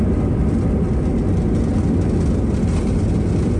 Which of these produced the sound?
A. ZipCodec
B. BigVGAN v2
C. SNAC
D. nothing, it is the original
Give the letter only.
D